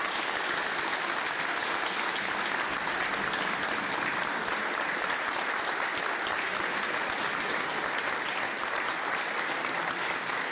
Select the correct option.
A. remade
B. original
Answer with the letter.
B